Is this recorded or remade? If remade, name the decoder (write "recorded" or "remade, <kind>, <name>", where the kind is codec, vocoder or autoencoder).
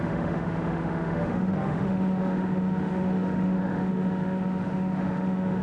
remade, autoencoder, DAC-VAE